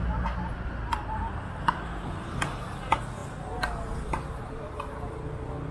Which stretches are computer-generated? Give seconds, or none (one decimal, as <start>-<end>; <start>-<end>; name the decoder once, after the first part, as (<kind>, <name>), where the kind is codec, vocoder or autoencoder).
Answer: none